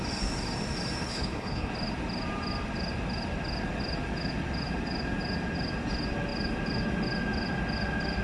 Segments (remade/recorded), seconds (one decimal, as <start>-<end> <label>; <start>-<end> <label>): 0.0-1.0 recorded; 1.0-1.7 remade; 1.7-8.2 recorded